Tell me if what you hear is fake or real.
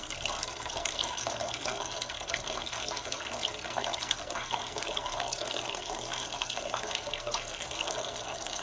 fake